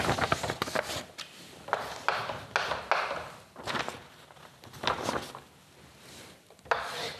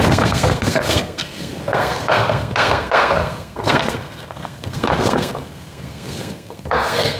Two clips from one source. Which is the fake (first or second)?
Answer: second